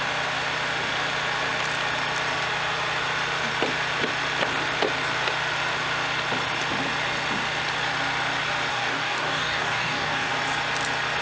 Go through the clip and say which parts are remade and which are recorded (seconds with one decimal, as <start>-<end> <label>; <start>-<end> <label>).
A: 0.0-8.7 recorded; 8.7-10.3 remade; 10.3-11.2 recorded